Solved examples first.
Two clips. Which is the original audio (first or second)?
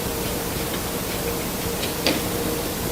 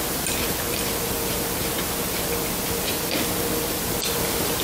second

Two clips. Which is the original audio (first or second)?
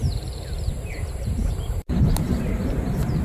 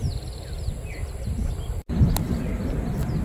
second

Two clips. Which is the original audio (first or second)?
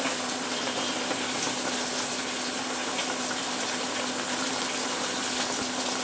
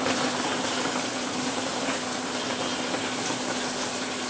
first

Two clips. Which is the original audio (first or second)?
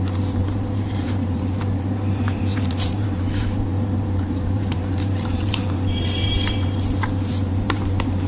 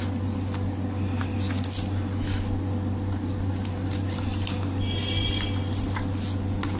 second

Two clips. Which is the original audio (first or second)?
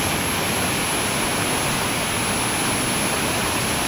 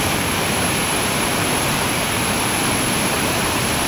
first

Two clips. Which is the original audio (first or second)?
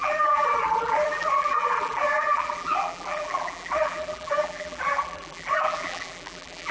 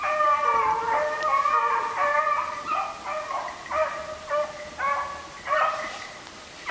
second